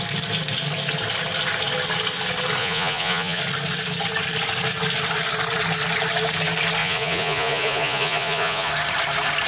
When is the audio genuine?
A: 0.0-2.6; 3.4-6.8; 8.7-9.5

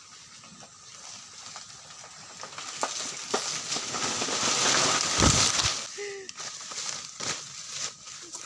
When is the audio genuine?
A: 0.0-8.5

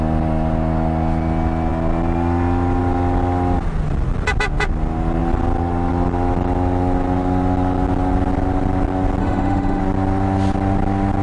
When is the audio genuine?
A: 0.0-9.2; 9.8-11.2

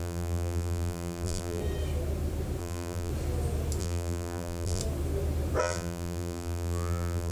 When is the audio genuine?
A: 1.6-2.6; 3.1-3.8; 4.8-5.6

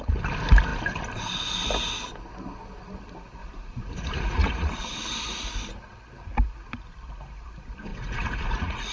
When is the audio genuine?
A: 0.0-3.4; 4.7-7.9